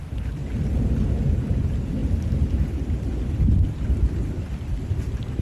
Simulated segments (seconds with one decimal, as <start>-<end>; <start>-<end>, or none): 0.0-0.4; 1.6-5.4